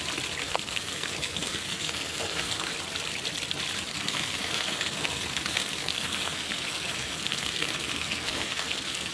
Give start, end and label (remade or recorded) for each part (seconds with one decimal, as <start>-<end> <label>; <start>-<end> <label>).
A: 0.0-0.4 recorded; 0.4-2.7 remade; 2.7-3.9 recorded; 3.9-9.1 remade